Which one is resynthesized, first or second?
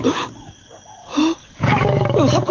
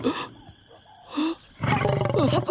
first